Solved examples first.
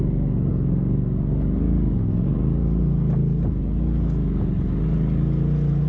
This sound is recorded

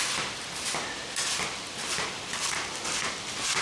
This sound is recorded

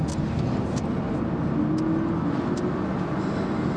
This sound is recorded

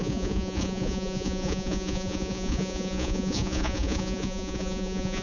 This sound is remade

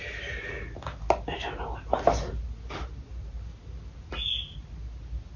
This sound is recorded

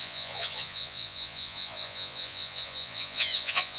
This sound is remade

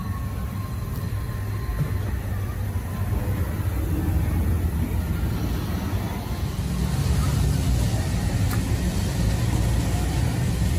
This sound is recorded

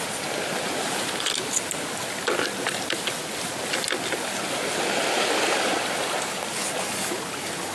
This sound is recorded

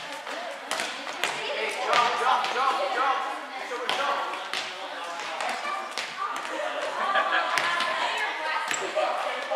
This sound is recorded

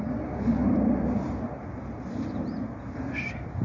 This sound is recorded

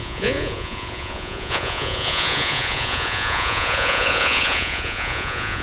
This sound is remade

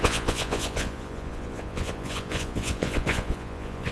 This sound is remade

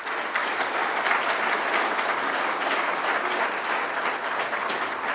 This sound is recorded